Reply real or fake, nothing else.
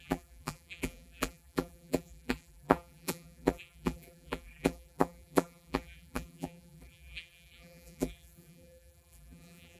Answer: fake